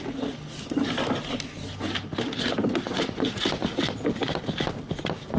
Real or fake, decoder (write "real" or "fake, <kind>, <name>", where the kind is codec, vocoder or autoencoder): real